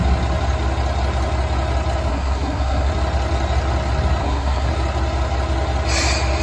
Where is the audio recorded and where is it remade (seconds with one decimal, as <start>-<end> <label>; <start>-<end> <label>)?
0.0-2.1 recorded; 2.1-2.9 remade; 2.9-4.2 recorded; 4.2-4.7 remade; 4.7-6.4 recorded